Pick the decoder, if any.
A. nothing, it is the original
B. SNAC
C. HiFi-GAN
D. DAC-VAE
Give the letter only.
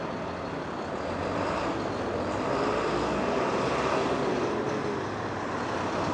A